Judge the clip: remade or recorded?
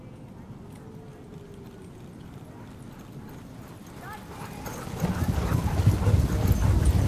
recorded